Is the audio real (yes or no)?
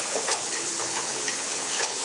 no